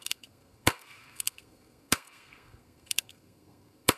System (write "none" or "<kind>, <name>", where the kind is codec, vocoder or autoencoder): codec, SNAC